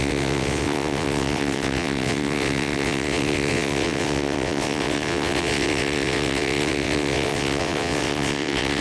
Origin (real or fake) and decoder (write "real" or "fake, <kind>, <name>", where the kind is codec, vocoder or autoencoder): fake, vocoder, WaveNeXt